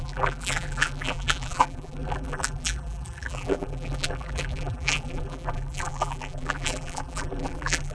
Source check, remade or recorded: remade